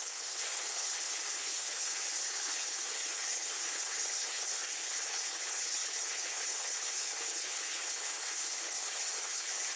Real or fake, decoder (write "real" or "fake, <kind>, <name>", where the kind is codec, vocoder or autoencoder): fake, codec, HILCodec